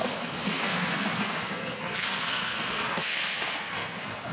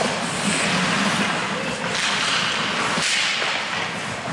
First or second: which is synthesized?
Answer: first